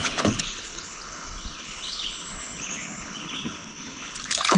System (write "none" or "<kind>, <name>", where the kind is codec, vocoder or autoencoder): codec, HILCodec